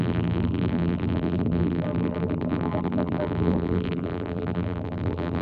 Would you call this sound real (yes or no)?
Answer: no